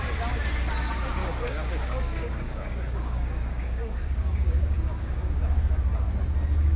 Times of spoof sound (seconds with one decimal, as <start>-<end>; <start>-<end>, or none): 1.2-5.3